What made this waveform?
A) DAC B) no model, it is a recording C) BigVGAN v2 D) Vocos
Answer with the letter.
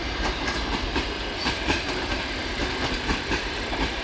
C